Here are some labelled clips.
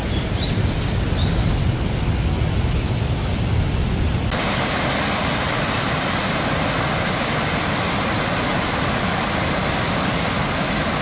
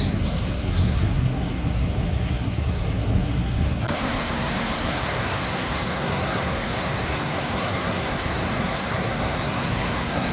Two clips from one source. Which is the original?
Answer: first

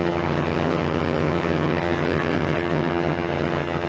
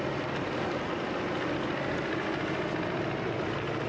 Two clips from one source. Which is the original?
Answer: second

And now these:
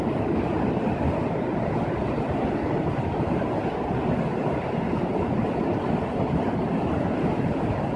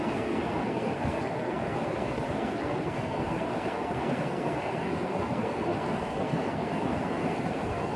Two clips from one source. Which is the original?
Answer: first